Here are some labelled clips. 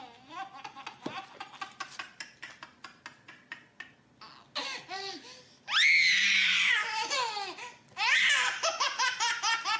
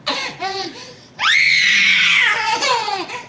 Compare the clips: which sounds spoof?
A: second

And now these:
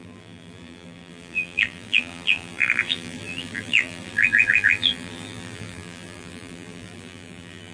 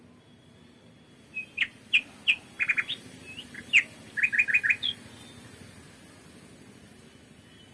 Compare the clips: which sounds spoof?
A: first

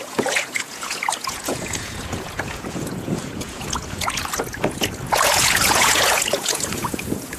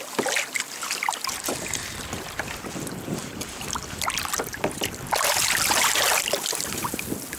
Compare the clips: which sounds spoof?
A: first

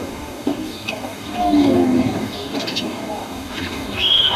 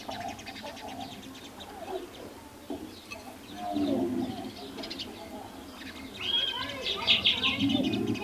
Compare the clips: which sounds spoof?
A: first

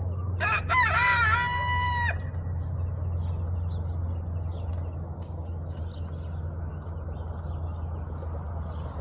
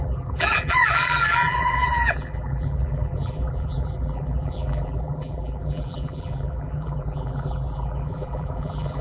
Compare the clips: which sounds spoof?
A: second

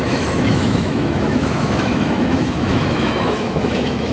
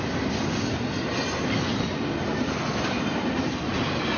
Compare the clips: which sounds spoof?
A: first